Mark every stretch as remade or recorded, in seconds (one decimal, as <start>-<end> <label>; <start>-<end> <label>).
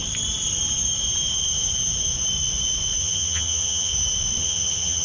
0.0-3.0 recorded; 3.0-3.9 remade; 3.9-4.4 recorded; 4.4-5.0 remade